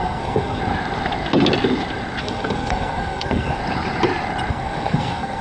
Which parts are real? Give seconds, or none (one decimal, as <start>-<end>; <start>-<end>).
0.6-2.2; 3.6-4.5